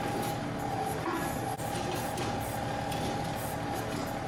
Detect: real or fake real